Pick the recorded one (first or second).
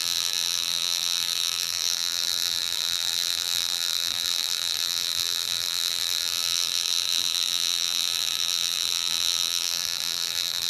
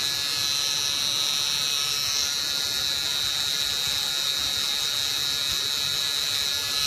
second